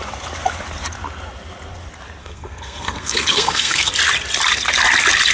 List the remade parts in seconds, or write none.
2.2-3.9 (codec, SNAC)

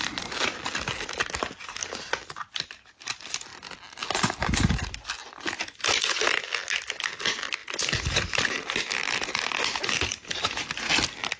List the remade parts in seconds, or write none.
1.8-2.4 (vocoder, BigVGAN v2)

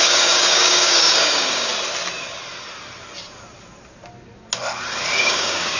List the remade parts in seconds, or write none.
0.0-1.7 (codec, DAC); 5.2-5.8

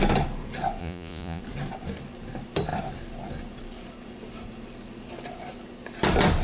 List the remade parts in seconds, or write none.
0.8-1.4 (vocoder, Vocos)

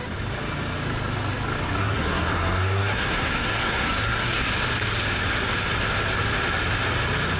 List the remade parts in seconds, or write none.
1.8-4.5 (codec, SNAC)